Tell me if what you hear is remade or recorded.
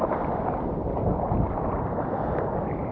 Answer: recorded